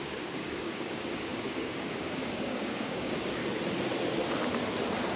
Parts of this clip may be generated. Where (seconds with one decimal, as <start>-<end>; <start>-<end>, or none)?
0.0-3.4